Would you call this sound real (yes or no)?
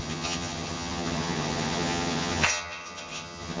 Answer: no